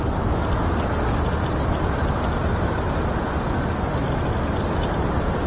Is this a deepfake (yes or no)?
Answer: no